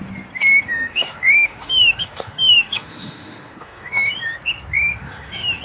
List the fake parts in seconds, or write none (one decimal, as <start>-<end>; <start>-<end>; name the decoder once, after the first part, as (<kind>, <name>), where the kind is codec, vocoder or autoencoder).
0.7-4.1 (autoencoder, DAC-VAE); 5.0-5.6